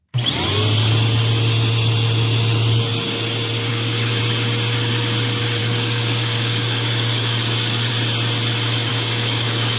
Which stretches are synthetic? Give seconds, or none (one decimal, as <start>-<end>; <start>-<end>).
3.7-4.2; 5.6-7.9; 8.9-9.8